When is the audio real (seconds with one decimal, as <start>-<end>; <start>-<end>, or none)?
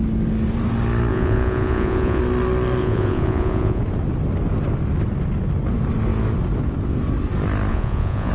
0.0-1.1; 2.2-2.8; 3.8-7.7